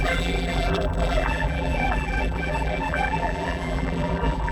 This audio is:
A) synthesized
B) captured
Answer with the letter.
A